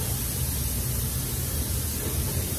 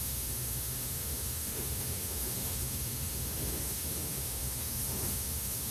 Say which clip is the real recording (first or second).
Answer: first